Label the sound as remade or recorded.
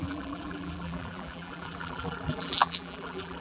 remade